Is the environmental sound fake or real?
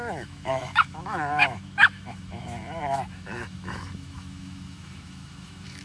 fake